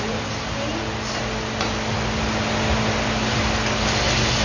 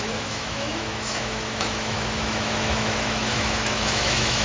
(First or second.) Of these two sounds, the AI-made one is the second